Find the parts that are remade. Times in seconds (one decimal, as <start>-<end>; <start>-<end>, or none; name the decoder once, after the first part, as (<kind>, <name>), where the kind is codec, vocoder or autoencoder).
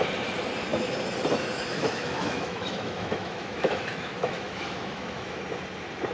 1.7-5.4 (autoencoder, DAC-VAE)